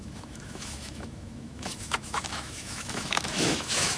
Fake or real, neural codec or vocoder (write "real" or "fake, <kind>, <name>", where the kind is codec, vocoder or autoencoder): fake, autoencoder, DAC-VAE